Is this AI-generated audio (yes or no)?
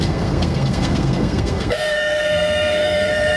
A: yes